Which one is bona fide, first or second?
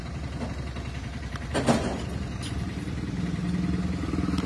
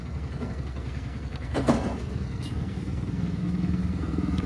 first